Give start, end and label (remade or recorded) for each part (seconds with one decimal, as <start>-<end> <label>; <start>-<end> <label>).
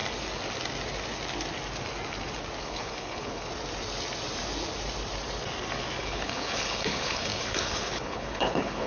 0.0-2.6 recorded; 2.6-3.5 remade; 3.5-6.0 recorded; 6.0-8.9 remade